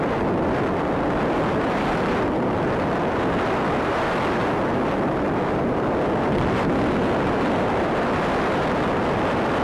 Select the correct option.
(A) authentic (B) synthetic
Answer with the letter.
B